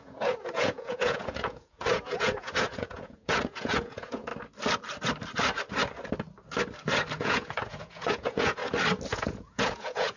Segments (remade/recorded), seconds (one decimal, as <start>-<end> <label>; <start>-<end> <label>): 0.0-4.3 remade; 4.3-7.2 recorded; 7.2-8.6 remade; 8.6-9.1 recorded; 9.1-10.2 remade